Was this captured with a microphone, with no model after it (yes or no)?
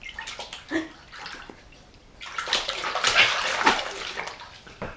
yes